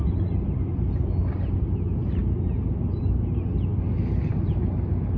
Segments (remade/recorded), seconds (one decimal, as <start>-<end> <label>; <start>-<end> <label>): 0.0-5.2 recorded